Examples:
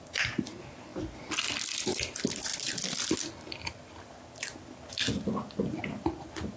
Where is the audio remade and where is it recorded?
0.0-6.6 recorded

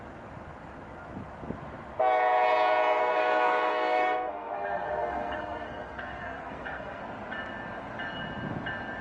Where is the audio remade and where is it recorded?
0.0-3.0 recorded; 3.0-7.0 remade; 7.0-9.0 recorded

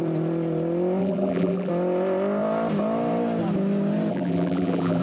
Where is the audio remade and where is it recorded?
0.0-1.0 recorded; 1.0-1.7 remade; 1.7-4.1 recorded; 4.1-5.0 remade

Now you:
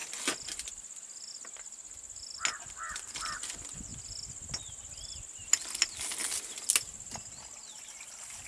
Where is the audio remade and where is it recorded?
0.0-8.5 recorded

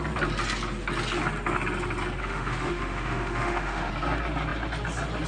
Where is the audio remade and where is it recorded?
0.0-2.2 recorded; 2.2-3.9 remade; 3.9-5.3 recorded

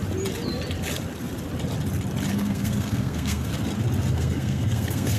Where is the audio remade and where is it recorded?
0.0-2.3 recorded; 2.3-3.5 remade; 3.5-4.1 recorded; 4.1-5.2 remade